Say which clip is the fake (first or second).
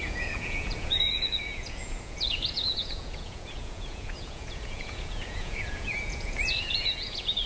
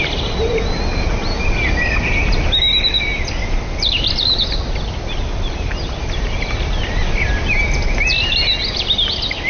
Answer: first